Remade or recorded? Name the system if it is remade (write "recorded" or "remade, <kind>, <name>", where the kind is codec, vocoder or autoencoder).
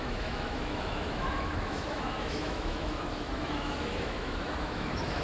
remade, autoencoder, DAC-VAE